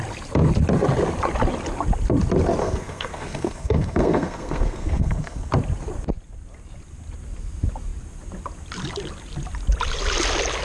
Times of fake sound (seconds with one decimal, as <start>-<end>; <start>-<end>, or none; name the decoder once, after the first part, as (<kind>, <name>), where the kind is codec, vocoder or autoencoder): 2.6-5.5 (codec, SNAC)